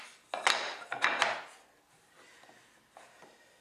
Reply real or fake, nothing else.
real